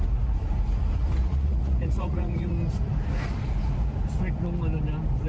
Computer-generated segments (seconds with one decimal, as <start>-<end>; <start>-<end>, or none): 1.2-2.5